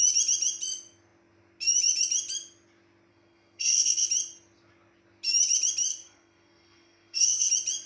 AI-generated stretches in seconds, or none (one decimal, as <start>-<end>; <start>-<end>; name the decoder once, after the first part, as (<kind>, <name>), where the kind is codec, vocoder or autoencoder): 3.1-4.1 (codec, SNAC); 5.9-7.5